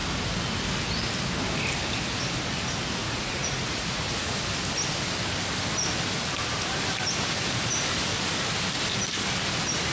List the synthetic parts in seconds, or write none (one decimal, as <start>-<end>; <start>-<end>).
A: 3.0-4.4